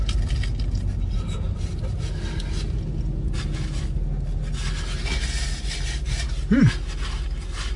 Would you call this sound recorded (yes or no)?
yes